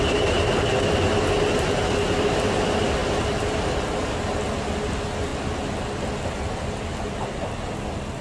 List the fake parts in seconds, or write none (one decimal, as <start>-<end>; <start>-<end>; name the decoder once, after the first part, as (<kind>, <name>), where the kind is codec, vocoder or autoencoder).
none